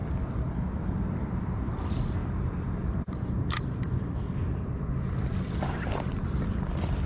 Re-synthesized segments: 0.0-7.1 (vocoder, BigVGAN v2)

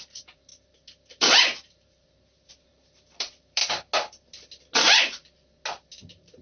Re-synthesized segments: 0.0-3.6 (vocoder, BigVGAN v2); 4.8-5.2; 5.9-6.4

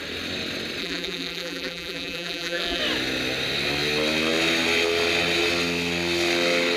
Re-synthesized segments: 0.8-2.8 (vocoder, BigVGAN v2)